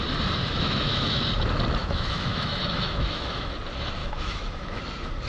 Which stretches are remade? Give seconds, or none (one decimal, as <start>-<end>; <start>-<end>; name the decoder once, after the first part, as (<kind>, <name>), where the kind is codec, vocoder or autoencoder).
0.4-1.2 (autoencoder, DAC-VAE); 1.8-3.5; 4.0-4.8